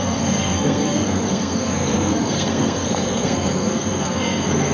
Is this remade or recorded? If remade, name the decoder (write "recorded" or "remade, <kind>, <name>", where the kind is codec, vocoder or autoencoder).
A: remade, codec, SNAC